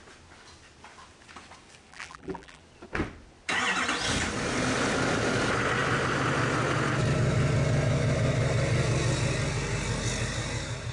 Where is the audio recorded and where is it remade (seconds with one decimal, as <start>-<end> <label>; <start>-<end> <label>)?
0.0-1.9 recorded; 1.9-2.6 remade; 2.6-10.9 recorded